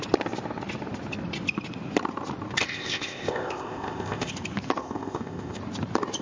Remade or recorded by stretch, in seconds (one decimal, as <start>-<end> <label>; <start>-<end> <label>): 0.0-2.6 recorded; 2.6-4.3 remade; 4.3-4.8 recorded; 4.8-5.6 remade; 5.6-6.2 recorded